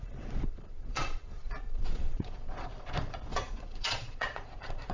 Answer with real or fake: fake